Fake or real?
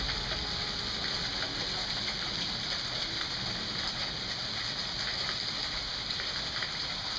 real